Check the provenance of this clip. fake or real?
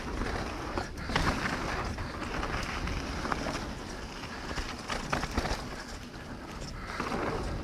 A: real